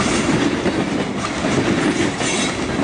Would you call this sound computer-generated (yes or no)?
no